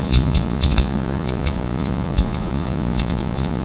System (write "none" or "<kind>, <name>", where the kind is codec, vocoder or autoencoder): vocoder, Vocos